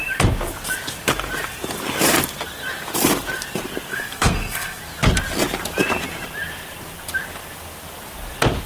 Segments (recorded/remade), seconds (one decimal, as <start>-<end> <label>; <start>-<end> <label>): 0.0-3.9 recorded; 3.9-4.8 remade; 4.8-8.7 recorded